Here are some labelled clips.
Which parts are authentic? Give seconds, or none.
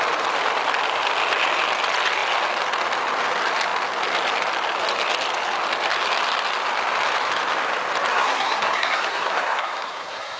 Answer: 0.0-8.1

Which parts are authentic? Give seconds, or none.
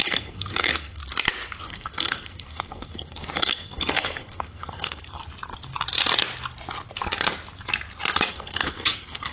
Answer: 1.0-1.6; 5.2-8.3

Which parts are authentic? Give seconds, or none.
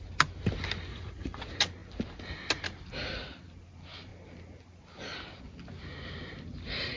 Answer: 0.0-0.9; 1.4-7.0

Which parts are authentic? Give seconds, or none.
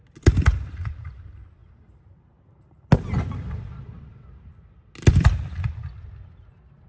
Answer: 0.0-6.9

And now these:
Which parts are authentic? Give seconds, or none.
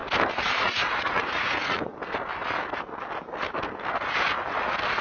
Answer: 0.0-0.6; 1.9-5.0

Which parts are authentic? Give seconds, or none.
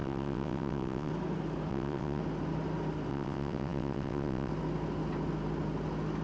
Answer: 1.1-1.7; 2.2-3.1; 4.5-6.2